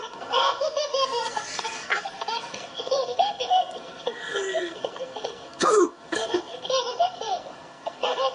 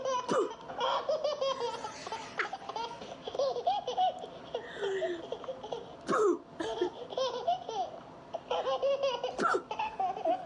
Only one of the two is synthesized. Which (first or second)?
first